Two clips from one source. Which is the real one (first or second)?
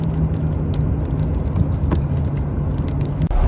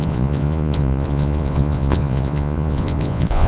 first